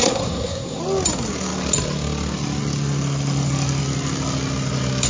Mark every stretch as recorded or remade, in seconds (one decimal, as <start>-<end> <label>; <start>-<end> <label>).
0.0-0.8 remade; 0.8-5.1 recorded